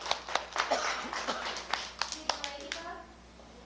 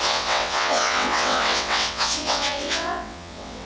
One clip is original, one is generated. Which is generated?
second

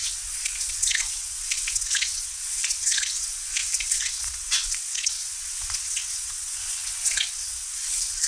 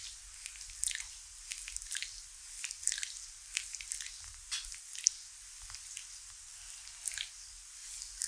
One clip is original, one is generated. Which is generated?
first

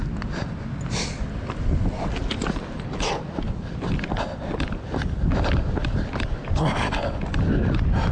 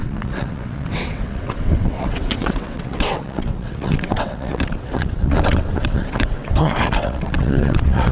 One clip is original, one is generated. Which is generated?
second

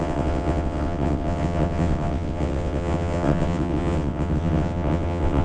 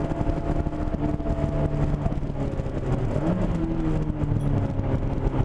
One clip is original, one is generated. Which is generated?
first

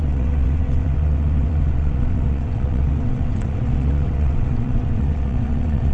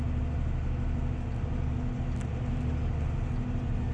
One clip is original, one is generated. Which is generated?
first